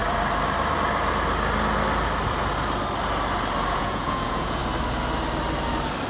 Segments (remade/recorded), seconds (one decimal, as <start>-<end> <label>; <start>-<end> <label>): 0.0-3.7 recorded; 3.7-4.6 remade; 4.6-6.1 recorded